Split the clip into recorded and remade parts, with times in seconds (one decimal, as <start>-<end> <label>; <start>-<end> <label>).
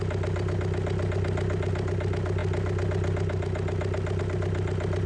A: 0.0-5.1 recorded